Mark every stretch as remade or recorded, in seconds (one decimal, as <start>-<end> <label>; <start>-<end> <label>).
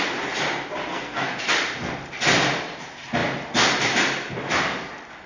0.0-0.9 recorded; 0.9-1.4 remade; 1.4-5.3 recorded